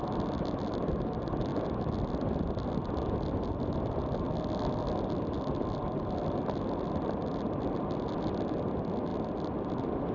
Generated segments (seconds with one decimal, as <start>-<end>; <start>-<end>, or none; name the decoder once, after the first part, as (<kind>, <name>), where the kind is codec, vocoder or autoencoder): none